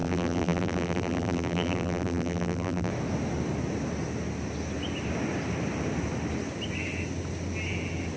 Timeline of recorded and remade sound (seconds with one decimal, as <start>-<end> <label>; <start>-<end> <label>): 0.0-2.9 remade; 2.9-8.2 recorded